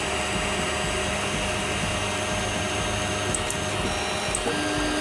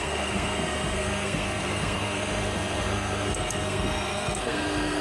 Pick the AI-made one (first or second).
second